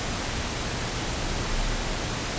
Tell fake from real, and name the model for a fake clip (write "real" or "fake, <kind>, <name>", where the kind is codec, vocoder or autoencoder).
real